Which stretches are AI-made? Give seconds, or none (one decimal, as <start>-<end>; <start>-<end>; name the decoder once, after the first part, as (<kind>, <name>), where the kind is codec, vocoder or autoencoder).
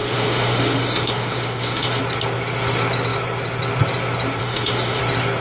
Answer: 0.0-2.0 (autoencoder, DAC-VAE); 4.4-5.0